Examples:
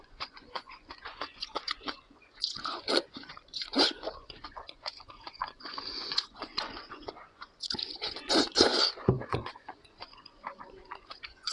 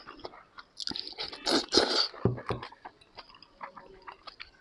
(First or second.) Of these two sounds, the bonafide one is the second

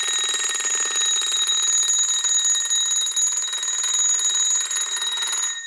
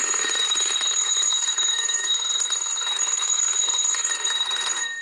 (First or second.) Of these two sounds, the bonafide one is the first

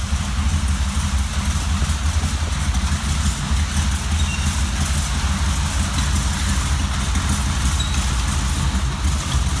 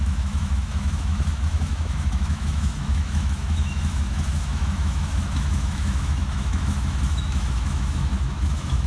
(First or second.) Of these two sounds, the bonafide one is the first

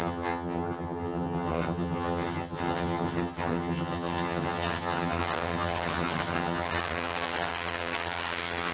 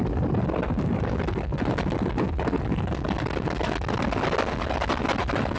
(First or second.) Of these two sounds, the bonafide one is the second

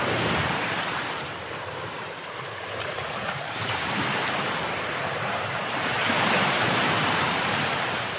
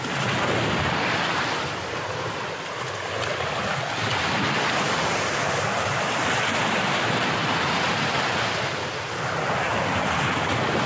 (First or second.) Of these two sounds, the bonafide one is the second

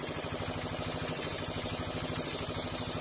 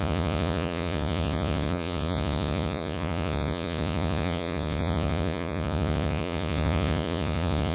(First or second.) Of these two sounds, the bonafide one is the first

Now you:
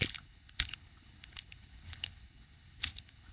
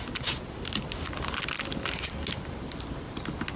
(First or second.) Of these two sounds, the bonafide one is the second